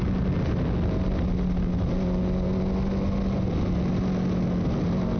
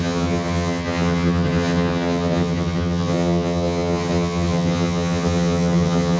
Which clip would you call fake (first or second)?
second